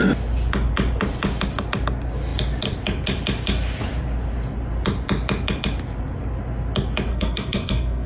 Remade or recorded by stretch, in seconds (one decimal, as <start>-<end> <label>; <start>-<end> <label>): 0.0-7.1 recorded; 7.1-8.1 remade